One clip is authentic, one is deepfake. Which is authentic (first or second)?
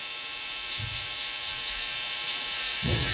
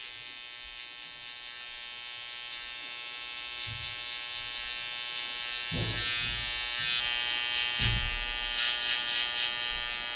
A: second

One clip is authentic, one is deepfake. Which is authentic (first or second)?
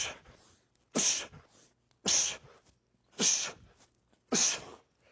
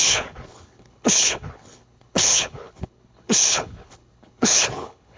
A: first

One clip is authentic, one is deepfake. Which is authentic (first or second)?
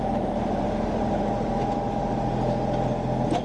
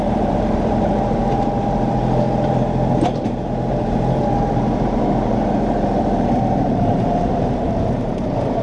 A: first